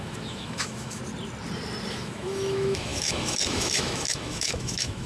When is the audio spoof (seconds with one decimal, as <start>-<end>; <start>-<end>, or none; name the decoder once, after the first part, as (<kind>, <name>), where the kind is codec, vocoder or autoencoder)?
0.0-1.0 (autoencoder, DAC-VAE); 1.9-5.1